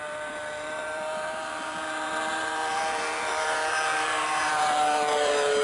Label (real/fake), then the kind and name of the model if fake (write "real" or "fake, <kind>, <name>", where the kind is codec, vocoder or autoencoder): fake, vocoder, BigVGAN v2